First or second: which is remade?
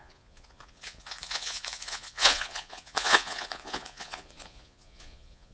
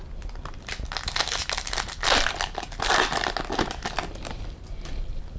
first